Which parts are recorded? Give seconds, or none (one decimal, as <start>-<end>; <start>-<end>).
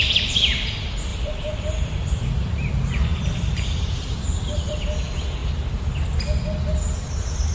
0.0-1.1; 2.7-3.1; 4.8-5.4; 5.9-7.5